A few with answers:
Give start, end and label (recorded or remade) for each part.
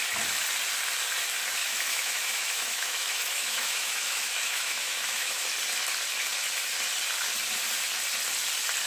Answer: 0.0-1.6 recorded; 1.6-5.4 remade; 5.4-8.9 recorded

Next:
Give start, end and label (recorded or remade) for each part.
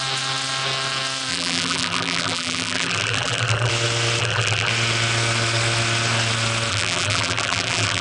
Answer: 0.0-1.3 recorded; 1.3-3.7 remade; 3.7-4.2 recorded; 4.2-4.7 remade; 4.7-6.7 recorded; 6.7-8.0 remade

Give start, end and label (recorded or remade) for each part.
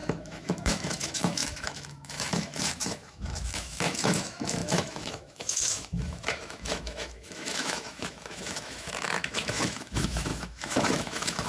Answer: 0.0-11.5 remade